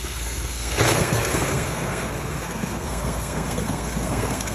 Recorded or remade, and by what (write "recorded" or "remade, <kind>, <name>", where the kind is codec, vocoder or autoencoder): remade, codec, SNAC